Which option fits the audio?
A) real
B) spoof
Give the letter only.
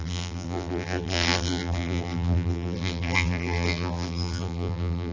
B